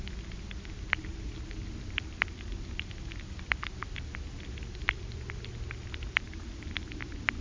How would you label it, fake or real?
real